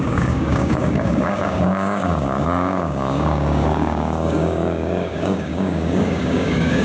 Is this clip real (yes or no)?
no